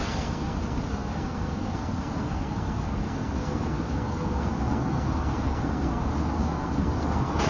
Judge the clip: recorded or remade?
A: remade